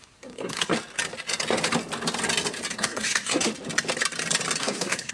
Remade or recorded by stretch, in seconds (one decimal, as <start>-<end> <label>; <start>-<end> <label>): 0.0-0.7 remade; 0.7-2.7 recorded; 2.7-3.5 remade; 3.5-4.6 recorded; 4.6-5.1 remade